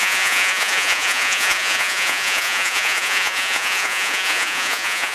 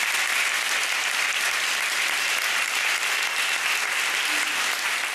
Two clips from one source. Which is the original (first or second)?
second